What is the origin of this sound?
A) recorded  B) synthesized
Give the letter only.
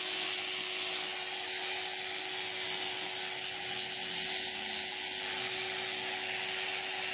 A